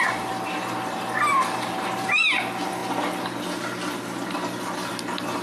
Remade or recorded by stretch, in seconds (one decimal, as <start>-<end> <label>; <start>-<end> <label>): 0.0-1.3 recorded; 1.3-2.2 remade; 2.2-5.4 recorded